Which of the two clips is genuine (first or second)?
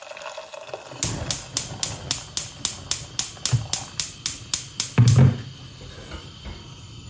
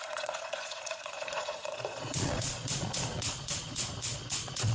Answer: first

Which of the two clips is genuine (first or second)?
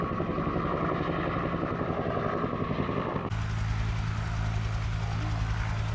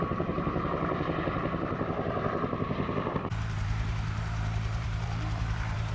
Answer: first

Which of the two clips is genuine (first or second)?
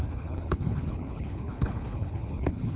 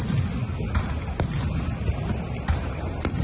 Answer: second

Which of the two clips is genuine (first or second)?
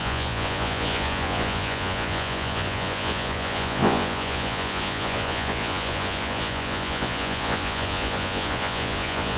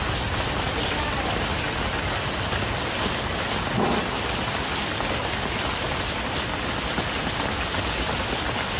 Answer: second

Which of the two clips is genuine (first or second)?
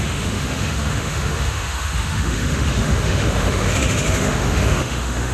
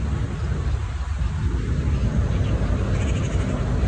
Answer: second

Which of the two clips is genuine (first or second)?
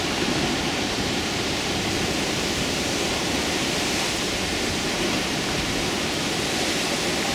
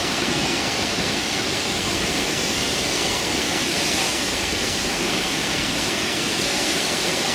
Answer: first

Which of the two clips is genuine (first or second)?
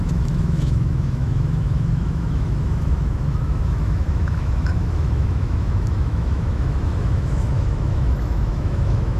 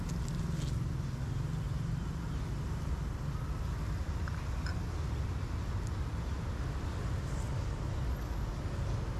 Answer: second